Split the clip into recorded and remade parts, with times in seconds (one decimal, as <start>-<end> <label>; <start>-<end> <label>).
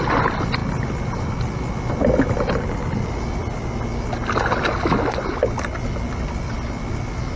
0.0-7.4 recorded